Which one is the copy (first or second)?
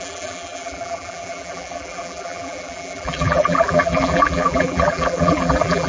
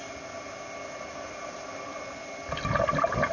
first